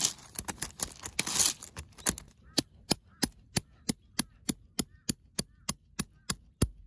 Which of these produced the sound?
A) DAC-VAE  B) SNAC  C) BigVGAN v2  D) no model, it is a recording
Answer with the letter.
D